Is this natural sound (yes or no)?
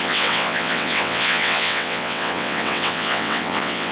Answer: no